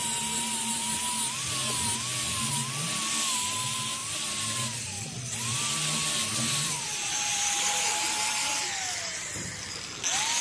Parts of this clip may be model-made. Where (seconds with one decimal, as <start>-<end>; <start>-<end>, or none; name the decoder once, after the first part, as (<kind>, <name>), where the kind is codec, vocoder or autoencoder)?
4.0-5.6 (vocoder, BigVGAN v2); 7.3-8.2